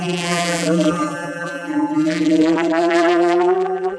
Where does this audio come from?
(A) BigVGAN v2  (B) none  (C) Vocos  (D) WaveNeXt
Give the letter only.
A